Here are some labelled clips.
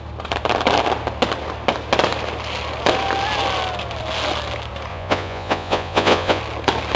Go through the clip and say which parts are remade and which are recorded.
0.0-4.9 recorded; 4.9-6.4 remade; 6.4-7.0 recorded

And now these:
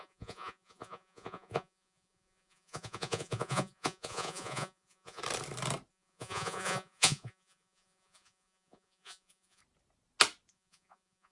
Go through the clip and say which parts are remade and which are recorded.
0.0-5.2 remade; 5.2-5.9 recorded; 5.9-9.6 remade; 9.6-10.5 recorded; 10.5-11.3 remade